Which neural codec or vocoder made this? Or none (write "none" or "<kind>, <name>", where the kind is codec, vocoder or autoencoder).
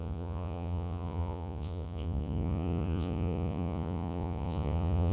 vocoder, Vocos